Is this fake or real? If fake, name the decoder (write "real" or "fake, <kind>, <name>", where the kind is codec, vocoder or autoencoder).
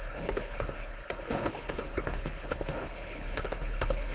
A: fake, codec, HILCodec